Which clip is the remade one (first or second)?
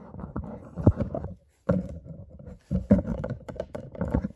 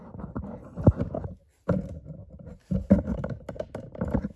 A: first